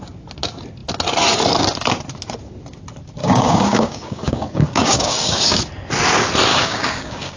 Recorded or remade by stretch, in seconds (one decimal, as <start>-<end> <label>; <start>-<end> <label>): 0.0-3.2 recorded; 3.2-5.6 remade; 5.6-6.5 recorded; 6.5-7.4 remade